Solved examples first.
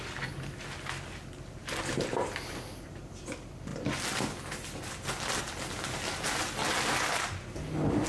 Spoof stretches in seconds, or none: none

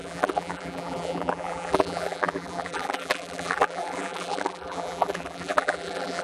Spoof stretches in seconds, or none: 0.0-6.2 (vocoder, BigVGAN v2)

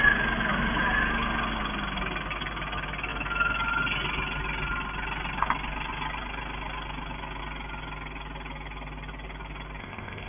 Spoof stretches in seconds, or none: 9.8-10.3 (codec, ZipCodec)

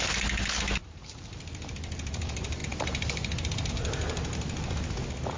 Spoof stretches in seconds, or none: none